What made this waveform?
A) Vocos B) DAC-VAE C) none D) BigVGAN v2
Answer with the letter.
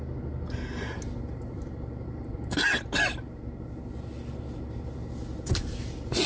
C